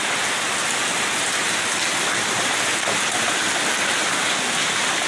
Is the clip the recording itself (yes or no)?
yes